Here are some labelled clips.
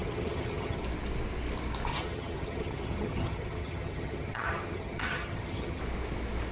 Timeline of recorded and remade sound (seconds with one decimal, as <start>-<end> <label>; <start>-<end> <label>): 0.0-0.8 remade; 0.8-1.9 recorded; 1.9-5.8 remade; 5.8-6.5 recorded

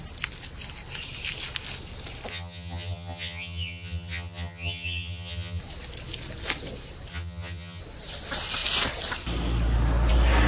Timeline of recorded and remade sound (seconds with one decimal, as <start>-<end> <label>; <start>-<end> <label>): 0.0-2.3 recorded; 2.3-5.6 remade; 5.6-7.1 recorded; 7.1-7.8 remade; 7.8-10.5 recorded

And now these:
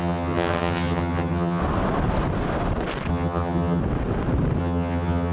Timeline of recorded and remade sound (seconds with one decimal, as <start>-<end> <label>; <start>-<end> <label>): 0.0-1.6 remade; 1.6-3.1 recorded; 3.1-3.8 remade; 3.8-4.6 recorded; 4.6-5.3 remade

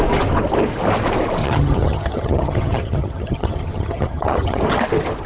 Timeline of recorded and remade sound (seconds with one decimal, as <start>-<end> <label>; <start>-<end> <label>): 0.0-1.4 recorded; 1.4-4.6 remade; 4.6-5.3 recorded

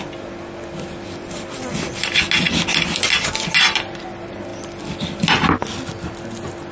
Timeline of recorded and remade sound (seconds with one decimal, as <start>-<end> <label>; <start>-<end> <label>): 0.0-6.7 recorded

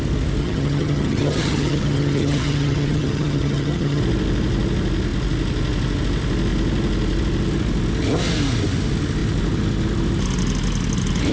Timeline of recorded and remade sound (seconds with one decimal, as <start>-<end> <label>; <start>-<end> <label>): 0.0-0.4 recorded; 0.4-4.0 remade; 4.0-11.3 recorded